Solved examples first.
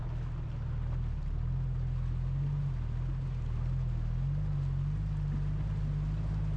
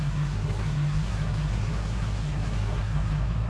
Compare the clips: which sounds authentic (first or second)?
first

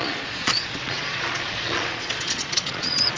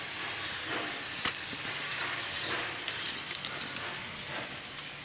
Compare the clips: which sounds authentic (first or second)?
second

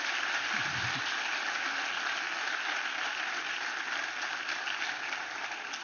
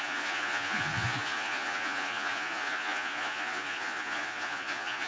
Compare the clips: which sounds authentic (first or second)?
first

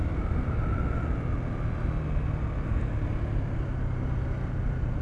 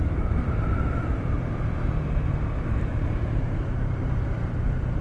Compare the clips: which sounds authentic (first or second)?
first